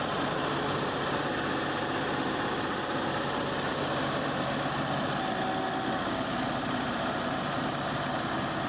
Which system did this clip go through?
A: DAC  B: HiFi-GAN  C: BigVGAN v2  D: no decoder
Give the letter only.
D